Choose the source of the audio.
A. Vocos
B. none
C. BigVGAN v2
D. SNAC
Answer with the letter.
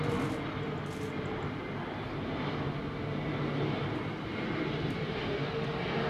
B